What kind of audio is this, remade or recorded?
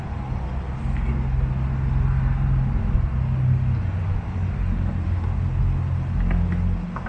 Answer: recorded